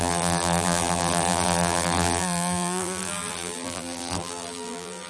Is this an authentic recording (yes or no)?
no